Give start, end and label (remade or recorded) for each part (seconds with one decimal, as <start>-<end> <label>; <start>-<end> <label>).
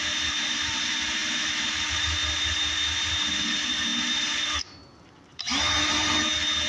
0.0-6.7 remade